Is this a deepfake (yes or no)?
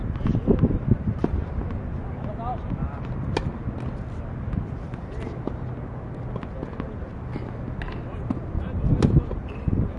no